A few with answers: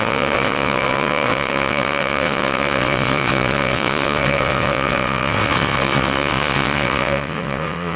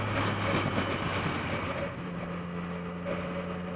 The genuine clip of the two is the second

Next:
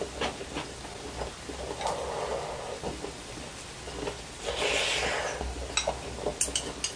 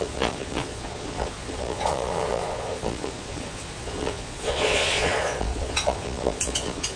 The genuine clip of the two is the first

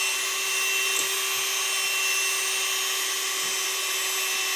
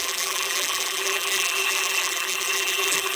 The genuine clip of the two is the first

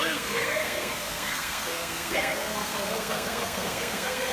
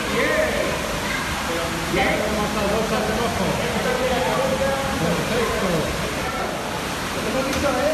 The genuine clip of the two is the second